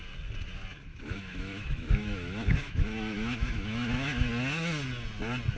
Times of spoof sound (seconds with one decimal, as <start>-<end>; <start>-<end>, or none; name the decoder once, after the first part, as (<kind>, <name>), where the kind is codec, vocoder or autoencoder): 0.9-4.3 (autoencoder, DAC-VAE)